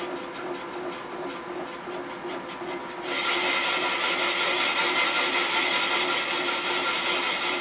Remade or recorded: recorded